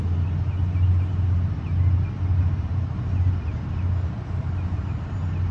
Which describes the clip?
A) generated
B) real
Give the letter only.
B